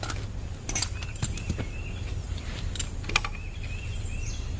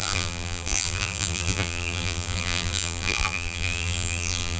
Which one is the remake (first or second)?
second